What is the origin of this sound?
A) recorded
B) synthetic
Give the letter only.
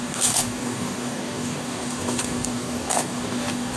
B